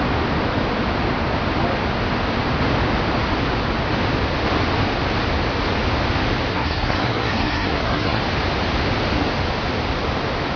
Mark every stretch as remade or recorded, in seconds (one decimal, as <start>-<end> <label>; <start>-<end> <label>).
0.0-6.5 recorded; 6.5-8.2 remade; 8.2-10.6 recorded